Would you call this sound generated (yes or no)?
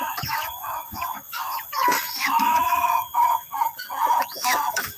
yes